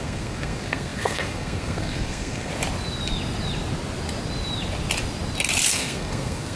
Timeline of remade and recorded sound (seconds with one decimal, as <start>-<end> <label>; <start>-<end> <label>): 0.0-2.5 remade; 2.5-5.7 recorded; 5.7-6.6 remade